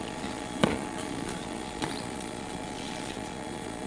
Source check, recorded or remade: remade